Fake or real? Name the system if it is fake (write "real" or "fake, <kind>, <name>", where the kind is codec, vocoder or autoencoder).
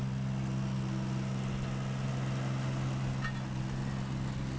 real